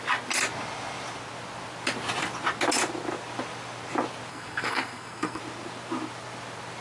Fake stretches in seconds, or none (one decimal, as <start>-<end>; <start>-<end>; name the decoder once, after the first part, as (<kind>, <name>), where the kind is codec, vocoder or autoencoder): 4.3-5.4 (codec, SNAC)